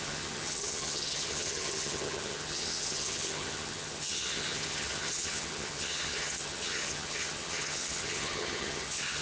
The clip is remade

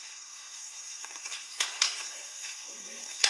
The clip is remade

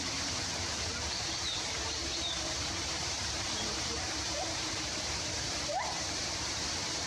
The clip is remade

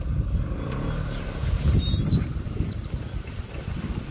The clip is recorded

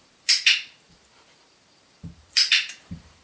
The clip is remade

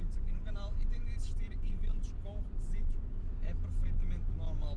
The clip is recorded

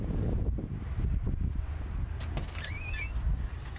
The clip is recorded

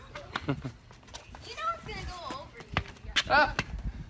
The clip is recorded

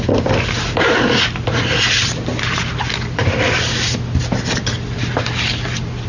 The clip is remade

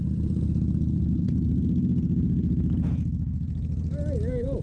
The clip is recorded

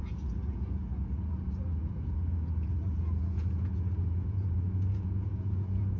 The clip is remade